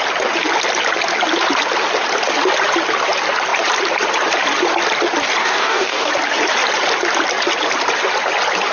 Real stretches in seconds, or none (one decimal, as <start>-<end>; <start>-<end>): 0.0-5.4; 6.1-8.7